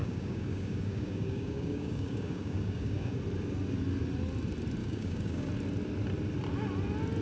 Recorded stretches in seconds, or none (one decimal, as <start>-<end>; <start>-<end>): 3.2-4.8; 5.5-7.2